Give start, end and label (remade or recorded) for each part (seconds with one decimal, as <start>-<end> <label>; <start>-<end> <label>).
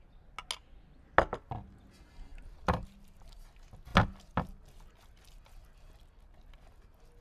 0.0-2.3 recorded; 2.3-3.4 remade; 3.4-7.2 recorded